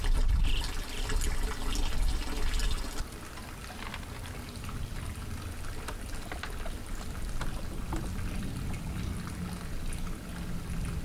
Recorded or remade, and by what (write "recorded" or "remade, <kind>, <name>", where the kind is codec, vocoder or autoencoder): recorded